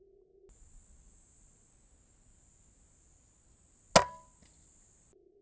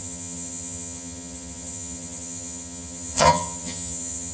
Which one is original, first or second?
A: first